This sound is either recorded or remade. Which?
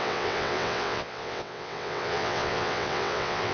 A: remade